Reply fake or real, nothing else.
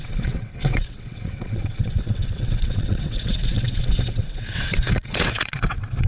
fake